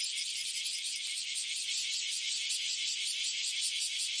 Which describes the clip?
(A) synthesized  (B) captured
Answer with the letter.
A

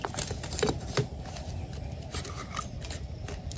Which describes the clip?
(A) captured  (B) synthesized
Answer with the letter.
A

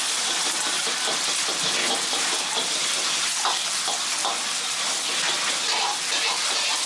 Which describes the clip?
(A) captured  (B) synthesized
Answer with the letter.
A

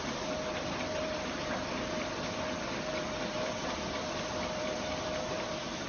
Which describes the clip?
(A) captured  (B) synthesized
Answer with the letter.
B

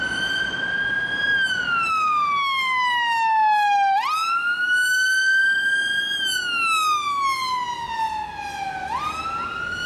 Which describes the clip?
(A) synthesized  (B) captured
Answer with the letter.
B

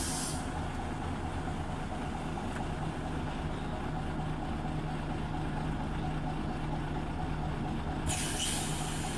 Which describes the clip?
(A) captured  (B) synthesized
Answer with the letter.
A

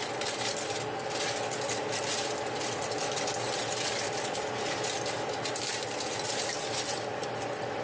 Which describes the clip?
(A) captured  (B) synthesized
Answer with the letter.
A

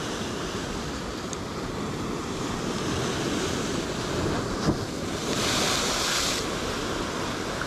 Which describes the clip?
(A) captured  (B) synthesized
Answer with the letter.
A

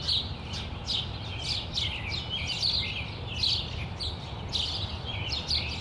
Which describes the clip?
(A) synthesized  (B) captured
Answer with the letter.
B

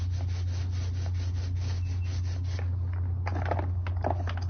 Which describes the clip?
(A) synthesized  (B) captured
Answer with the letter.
B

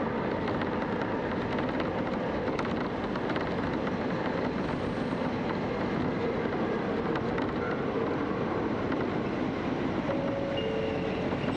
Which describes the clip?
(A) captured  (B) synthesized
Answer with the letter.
A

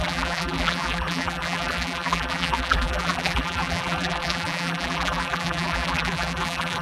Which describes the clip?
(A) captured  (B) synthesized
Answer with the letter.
B